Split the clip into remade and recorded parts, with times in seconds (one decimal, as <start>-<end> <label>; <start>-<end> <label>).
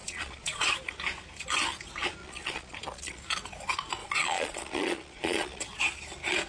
0.0-0.7 remade; 0.7-2.2 recorded; 2.2-3.2 remade; 3.2-4.0 recorded; 4.0-5.6 remade; 5.6-6.5 recorded